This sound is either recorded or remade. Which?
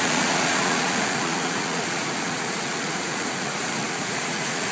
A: remade